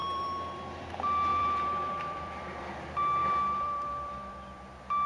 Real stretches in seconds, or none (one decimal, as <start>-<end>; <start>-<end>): 0.7-1.3; 2.6-3.2; 4.3-5.1